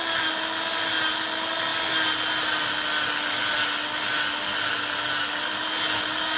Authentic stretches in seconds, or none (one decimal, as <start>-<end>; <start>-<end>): 0.0-6.4